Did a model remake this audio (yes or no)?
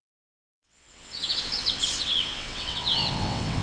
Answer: yes